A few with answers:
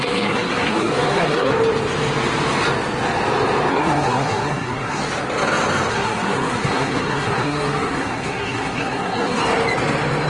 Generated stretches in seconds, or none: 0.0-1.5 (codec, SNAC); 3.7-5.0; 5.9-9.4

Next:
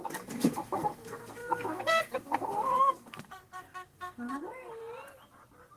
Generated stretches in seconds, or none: 0.0-4.8 (codec, SNAC)